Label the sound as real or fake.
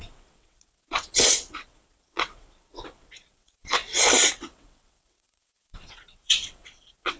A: fake